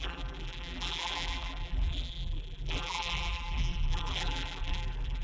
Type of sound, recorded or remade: remade